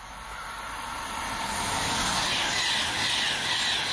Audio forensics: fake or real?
real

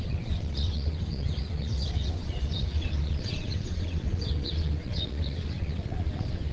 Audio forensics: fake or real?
fake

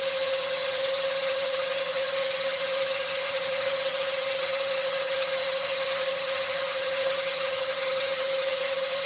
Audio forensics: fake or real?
fake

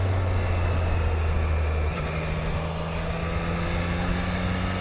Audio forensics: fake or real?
real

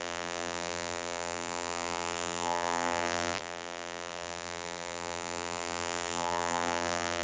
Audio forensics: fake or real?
fake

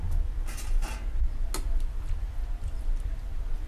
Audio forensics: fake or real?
real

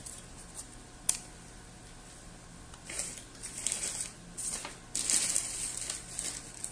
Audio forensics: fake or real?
real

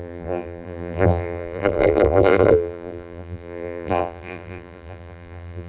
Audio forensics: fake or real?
fake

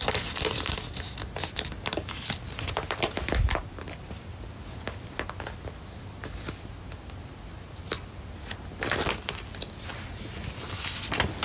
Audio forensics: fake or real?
real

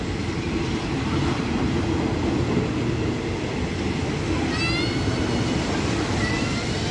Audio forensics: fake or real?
real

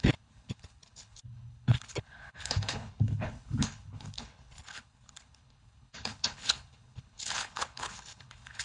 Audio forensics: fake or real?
fake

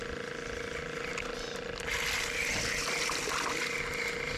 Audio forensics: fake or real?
real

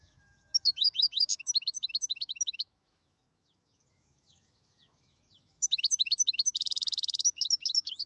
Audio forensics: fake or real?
fake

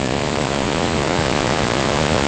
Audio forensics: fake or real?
fake